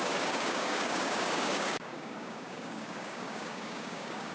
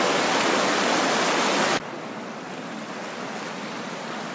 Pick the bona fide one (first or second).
second